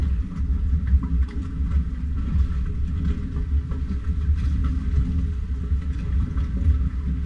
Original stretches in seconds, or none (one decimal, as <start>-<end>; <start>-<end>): 2.1-7.3